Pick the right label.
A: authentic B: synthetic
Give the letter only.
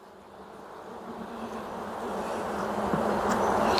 A